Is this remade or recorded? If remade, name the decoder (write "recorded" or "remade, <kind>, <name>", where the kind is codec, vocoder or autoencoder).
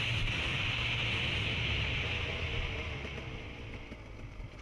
recorded